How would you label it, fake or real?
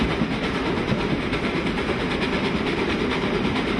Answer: real